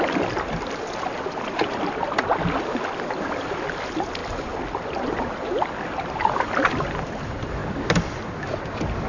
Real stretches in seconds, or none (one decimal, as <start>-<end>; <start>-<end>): 0.0-9.1